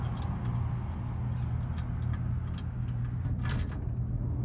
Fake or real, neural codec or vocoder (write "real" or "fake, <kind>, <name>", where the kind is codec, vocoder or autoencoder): real